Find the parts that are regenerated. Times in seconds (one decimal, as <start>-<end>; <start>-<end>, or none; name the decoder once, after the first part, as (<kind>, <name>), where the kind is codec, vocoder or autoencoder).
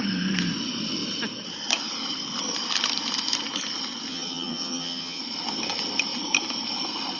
4.1-5.2 (vocoder, HiFi-GAN)